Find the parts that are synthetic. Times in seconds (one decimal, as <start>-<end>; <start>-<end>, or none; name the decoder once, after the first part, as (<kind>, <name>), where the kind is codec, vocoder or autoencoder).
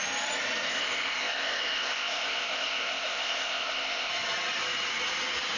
0.7-4.1 (codec, ZipCodec)